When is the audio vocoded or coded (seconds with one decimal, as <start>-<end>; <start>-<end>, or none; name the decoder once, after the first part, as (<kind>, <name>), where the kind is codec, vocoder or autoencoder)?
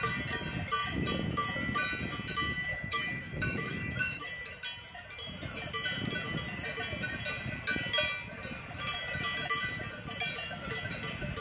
2.7-4.3 (autoencoder, DAC-VAE)